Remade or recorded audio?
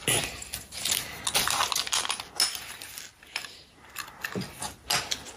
recorded